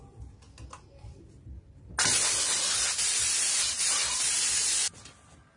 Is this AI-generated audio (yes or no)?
no